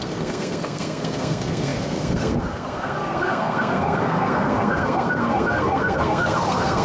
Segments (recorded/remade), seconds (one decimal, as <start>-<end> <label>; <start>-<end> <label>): 0.0-6.8 remade